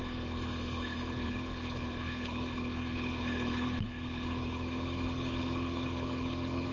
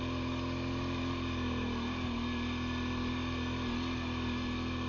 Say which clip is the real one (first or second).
second